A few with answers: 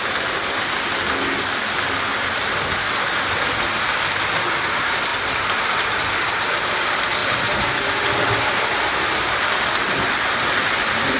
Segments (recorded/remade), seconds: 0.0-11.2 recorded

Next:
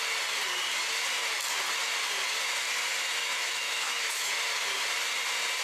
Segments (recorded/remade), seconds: 0.0-3.2 recorded; 3.2-4.3 remade; 4.3-5.6 recorded

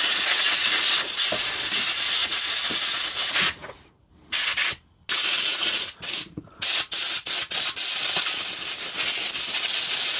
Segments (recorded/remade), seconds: 0.0-0.6 remade; 0.6-2.2 recorded; 2.2-3.9 remade; 3.9-5.5 recorded; 5.5-7.3 remade; 7.3-10.2 recorded

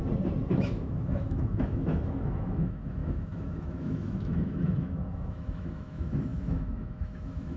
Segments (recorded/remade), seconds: 0.0-0.5 recorded; 0.5-7.6 remade

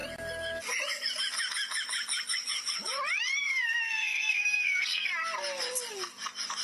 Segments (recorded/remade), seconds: 0.0-3.4 recorded; 3.4-5.1 remade; 5.1-6.6 recorded

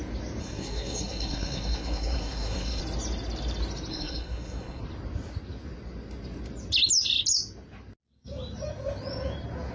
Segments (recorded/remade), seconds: 0.0-0.4 recorded; 0.4-2.8 remade; 2.8-3.9 recorded; 3.9-4.8 remade; 4.8-9.7 recorded